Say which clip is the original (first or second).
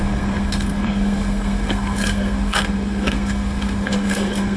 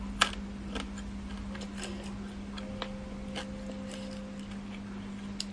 second